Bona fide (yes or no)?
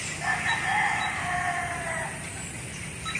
yes